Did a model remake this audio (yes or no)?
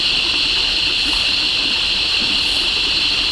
no